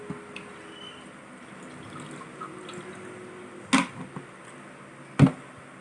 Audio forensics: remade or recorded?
recorded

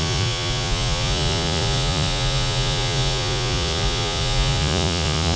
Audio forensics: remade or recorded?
remade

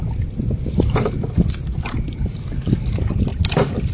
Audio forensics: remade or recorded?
recorded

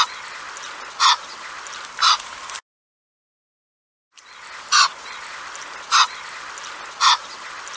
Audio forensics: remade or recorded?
recorded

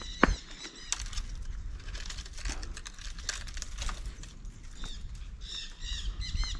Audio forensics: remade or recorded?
recorded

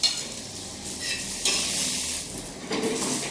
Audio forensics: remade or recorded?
recorded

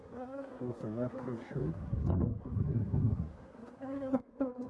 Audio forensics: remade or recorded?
remade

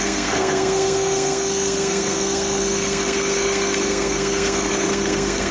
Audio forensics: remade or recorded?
remade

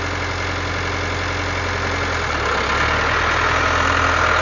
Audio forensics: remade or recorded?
recorded